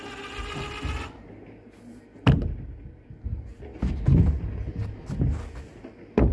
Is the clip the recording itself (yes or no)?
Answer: yes